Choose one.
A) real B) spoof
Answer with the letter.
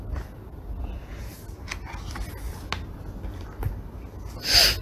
A